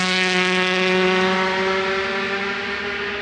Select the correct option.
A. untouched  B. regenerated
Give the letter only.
A